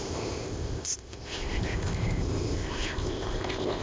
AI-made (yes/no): yes